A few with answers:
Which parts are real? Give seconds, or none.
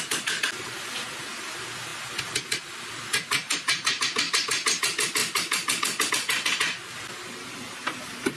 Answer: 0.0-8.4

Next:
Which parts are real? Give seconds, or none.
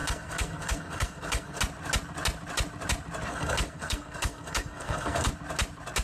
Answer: 1.6-3.3; 5.3-6.0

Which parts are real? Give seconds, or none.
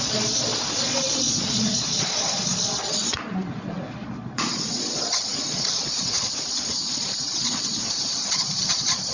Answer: none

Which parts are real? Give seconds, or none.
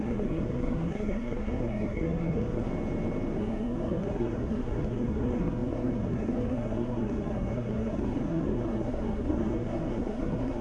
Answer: 2.7-3.4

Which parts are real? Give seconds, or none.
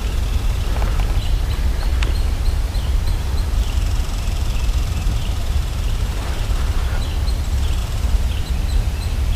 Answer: 0.0-1.9; 6.7-7.8; 8.5-9.4